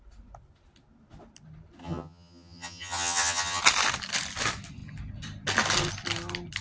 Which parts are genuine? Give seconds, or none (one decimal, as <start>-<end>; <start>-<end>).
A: 0.0-1.8; 3.6-6.6